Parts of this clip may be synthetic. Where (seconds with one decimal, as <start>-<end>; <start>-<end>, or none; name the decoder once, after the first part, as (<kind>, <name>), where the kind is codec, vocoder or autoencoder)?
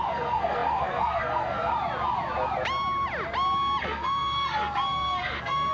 0.0-1.7 (codec, SNAC); 3.8-5.7